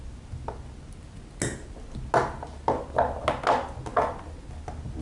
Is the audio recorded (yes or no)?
yes